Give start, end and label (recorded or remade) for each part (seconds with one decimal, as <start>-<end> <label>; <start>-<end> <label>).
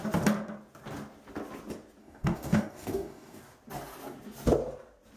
0.0-2.0 recorded; 2.0-3.4 remade; 3.4-5.2 recorded